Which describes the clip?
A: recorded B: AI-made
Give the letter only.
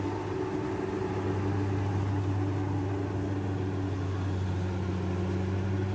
A